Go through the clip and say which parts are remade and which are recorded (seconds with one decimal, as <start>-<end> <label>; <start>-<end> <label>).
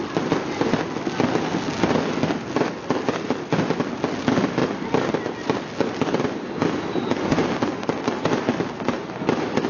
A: 0.0-9.7 recorded